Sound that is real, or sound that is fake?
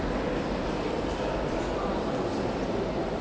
real